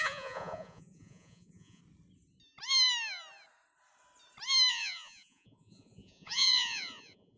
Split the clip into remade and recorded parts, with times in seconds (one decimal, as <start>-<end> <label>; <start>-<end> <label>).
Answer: 0.0-1.8 remade; 1.8-4.7 recorded; 4.7-7.4 remade